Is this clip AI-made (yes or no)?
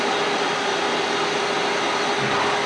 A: no